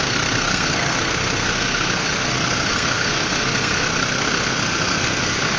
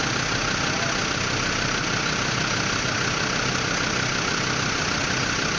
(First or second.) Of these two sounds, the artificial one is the first